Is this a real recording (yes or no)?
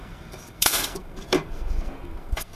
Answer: no